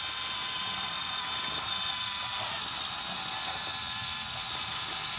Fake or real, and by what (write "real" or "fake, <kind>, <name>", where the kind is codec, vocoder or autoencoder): real